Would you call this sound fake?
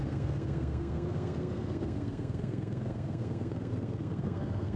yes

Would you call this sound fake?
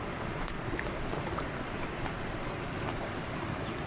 yes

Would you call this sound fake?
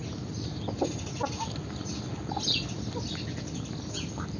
no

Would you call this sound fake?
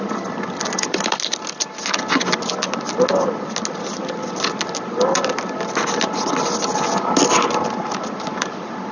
no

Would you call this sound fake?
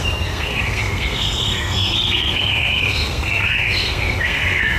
yes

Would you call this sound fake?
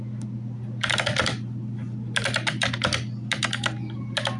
no